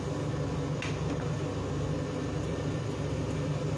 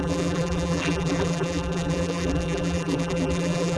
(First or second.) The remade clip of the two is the second